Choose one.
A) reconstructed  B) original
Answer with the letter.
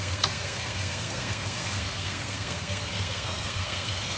A